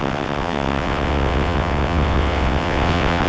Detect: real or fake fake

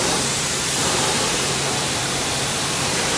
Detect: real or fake fake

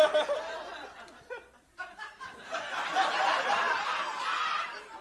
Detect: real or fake fake